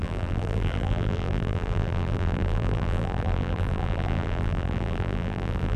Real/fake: fake